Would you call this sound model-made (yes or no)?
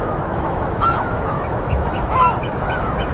yes